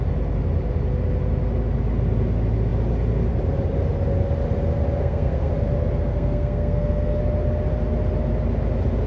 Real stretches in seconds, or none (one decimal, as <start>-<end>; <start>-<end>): 0.0-5.0; 5.5-6.1; 7.2-9.1